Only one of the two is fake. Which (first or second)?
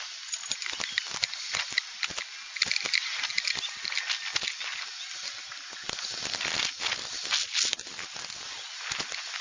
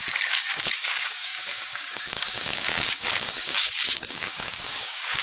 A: second